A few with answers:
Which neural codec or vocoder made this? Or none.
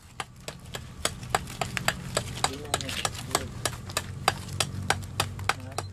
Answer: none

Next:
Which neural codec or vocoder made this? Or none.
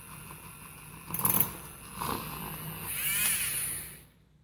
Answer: none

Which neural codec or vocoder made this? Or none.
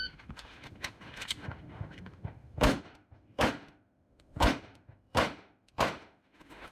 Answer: autoencoder, DAC-VAE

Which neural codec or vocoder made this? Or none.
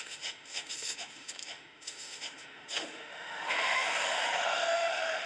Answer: autoencoder, DAC-VAE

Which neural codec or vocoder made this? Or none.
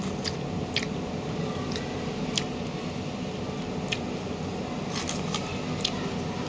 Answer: none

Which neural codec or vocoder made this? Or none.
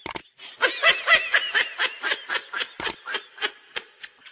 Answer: none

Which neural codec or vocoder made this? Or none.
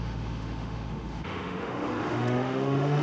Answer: autoencoder, DAC-VAE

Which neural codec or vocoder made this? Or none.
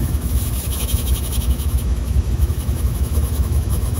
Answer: autoencoder, DAC-VAE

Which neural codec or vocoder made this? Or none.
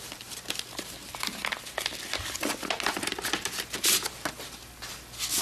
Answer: none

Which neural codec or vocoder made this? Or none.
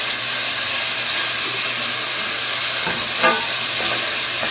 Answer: none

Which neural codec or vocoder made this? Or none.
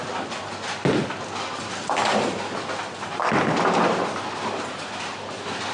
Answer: none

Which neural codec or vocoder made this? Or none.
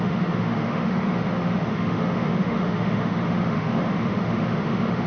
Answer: autoencoder, DAC-VAE